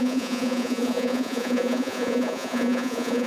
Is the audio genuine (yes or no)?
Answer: no